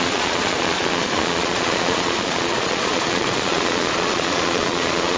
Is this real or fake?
fake